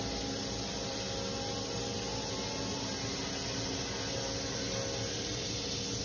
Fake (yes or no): no